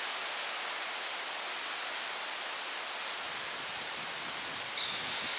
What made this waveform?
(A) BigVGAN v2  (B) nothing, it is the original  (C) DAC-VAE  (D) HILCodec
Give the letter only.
B